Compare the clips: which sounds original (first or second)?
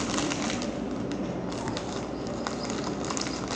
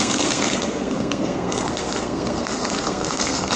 first